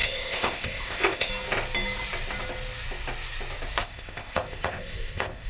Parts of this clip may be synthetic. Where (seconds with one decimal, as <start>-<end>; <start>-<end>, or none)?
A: 0.0-1.3; 3.8-5.5